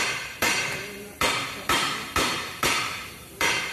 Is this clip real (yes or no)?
no